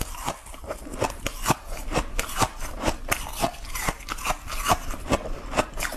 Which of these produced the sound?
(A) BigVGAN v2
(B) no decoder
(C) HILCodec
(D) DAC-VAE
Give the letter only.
B